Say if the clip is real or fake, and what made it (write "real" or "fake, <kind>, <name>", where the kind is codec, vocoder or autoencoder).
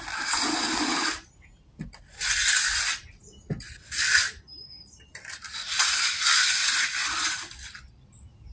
real